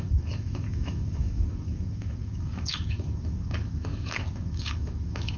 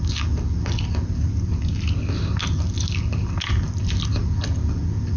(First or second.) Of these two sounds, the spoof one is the first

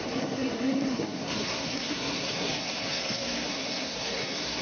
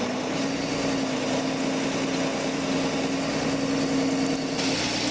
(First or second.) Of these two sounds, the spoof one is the first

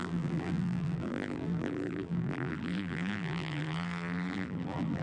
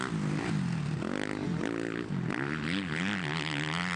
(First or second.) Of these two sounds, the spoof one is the first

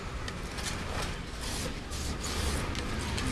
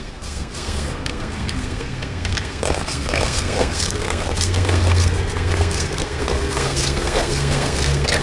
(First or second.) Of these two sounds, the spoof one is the second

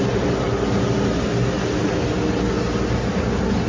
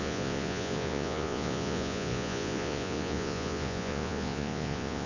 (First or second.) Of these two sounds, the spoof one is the second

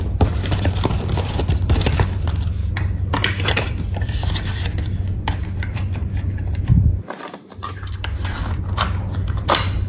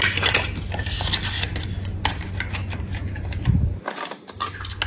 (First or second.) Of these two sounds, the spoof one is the first